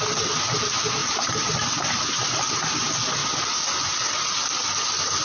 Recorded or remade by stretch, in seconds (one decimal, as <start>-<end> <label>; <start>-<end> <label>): 0.0-1.0 recorded; 1.0-2.7 remade; 2.7-5.2 recorded